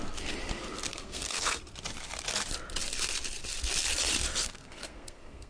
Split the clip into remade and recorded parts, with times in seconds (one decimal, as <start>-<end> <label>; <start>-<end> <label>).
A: 0.0-0.9 recorded; 0.9-1.6 remade; 1.6-4.4 recorded; 4.4-5.5 remade